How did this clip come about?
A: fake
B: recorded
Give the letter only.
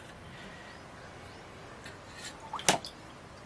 B